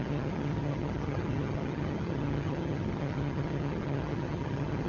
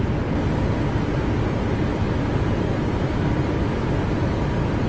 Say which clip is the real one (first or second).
second